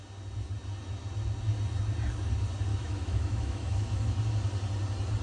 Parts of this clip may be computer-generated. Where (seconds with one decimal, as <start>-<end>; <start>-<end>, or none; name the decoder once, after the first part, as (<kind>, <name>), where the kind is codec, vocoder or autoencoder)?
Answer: 2.7-4.2 (autoencoder, DAC-VAE)